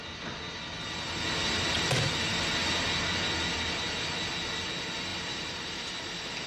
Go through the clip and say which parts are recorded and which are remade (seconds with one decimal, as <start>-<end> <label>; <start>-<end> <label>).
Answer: 0.0-5.1 recorded; 5.1-5.9 remade; 5.9-6.5 recorded